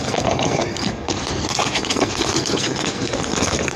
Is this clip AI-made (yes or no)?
yes